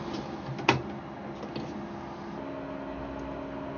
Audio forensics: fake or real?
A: real